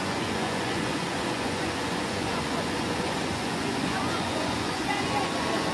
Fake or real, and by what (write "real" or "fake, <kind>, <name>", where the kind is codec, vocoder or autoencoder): fake, vocoder, Vocos